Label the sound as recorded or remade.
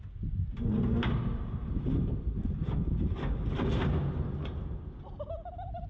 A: recorded